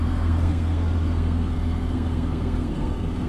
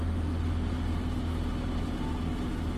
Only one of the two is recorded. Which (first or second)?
second